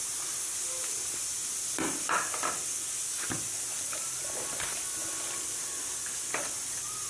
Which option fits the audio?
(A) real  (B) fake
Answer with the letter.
A